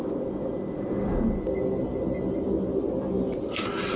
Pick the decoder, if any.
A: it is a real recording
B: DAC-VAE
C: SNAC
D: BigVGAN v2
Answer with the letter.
A